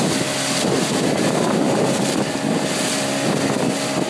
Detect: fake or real real